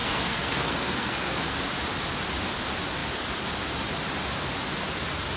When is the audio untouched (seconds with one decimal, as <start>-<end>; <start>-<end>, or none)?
1.6-5.4